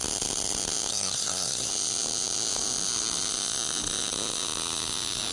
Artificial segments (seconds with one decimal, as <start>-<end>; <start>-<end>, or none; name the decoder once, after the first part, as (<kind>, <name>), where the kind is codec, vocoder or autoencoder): 0.9-1.7 (codec, SNAC)